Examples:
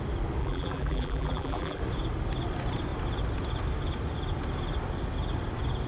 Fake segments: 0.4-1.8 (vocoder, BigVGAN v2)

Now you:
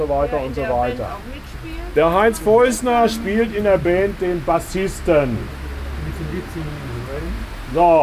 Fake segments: none

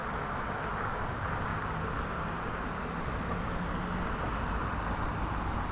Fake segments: 0.7-1.5 (vocoder, BigVGAN v2); 4.1-5.7

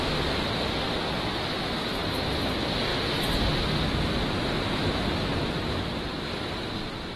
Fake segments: none

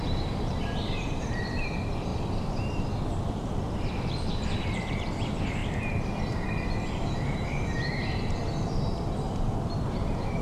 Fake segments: 0.0-2.1 (vocoder, BigVGAN v2); 3.3-5.6; 6.3-8.4; 8.9-10.4

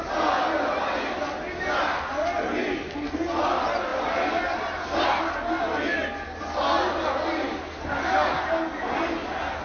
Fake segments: 3.9-4.6 (vocoder, BigVGAN v2); 6.0-6.6

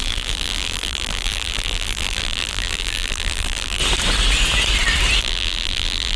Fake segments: 0.0-3.8 (vocoder, BigVGAN v2); 5.2-6.2

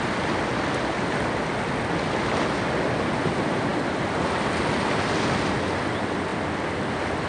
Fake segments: none